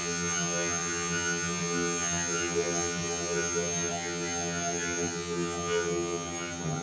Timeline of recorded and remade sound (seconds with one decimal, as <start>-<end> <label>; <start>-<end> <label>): 0.0-6.8 remade